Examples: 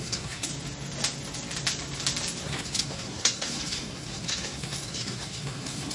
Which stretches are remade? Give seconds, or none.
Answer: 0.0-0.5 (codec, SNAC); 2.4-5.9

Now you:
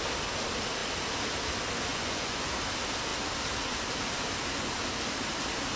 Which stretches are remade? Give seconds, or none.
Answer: 1.9-2.5 (vocoder, Vocos)

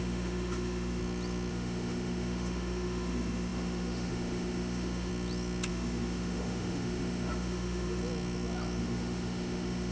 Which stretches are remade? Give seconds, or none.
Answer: 0.0-1.0 (autoencoder, DAC-VAE); 1.5-5.1; 5.7-8.0; 8.8-9.9

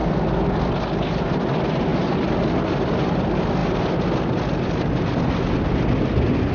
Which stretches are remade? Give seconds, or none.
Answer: none

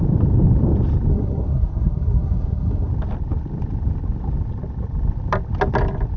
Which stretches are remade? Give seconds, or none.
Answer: 1.1-2.9 (codec, SNAC)

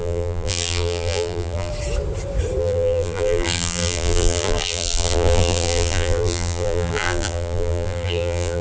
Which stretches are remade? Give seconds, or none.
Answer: 0.0-1.7 (vocoder, BigVGAN v2); 2.6-8.6

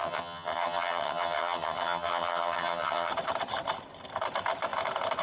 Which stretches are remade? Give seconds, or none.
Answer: 0.0-3.1 (vocoder, HiFi-GAN)